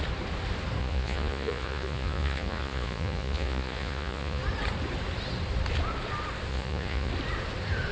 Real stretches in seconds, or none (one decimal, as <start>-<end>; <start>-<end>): 0.0-0.8; 4.4-6.5; 7.1-7.9